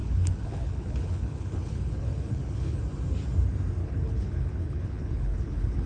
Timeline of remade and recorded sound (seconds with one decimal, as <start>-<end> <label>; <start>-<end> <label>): 0.0-2.8 remade; 2.8-3.8 recorded; 3.8-5.9 remade